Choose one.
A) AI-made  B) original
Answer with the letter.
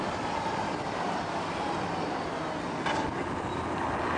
B